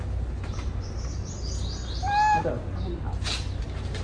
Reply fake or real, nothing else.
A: real